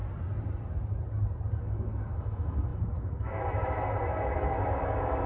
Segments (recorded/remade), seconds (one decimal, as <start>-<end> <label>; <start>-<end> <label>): 0.0-1.6 recorded; 1.6-5.3 remade